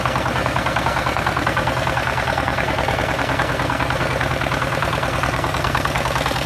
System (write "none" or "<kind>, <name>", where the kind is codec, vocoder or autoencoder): codec, SNAC